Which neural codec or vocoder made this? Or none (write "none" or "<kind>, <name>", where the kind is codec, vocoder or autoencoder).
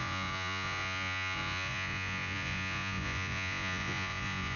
vocoder, Vocos